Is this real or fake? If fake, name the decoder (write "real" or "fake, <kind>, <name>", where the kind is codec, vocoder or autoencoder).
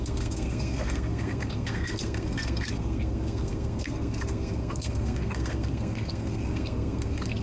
fake, codec, SNAC